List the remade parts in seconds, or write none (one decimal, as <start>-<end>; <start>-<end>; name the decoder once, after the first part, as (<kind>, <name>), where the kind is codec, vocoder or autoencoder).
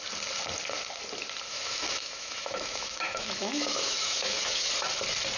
1.5-4.7 (autoencoder, DAC-VAE)